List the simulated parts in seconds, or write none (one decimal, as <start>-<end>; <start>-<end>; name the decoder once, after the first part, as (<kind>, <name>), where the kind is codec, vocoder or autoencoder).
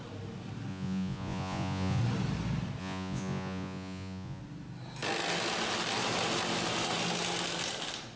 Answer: 0.7-2.0 (vocoder, Vocos); 2.8-4.4